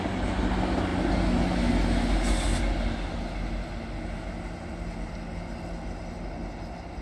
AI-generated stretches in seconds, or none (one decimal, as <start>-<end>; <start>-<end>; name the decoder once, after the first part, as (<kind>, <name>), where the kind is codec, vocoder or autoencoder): none